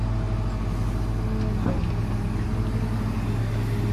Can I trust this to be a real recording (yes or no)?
yes